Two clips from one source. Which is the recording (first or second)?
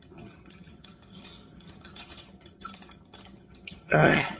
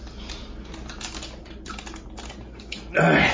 second